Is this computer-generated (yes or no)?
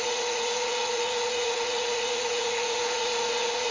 yes